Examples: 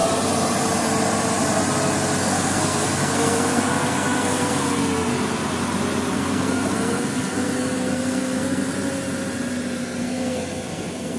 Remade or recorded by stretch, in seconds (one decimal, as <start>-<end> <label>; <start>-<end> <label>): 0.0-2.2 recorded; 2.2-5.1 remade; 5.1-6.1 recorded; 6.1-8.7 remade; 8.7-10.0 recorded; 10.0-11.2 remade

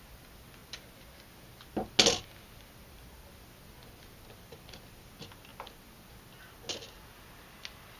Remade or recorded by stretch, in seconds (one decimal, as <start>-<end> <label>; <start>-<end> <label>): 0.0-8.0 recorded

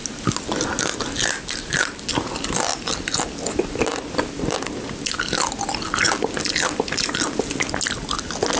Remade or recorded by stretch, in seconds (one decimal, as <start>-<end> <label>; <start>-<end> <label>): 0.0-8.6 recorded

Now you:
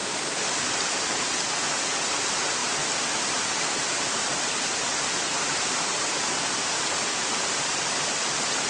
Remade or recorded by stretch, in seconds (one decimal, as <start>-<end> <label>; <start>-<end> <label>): 0.0-8.7 recorded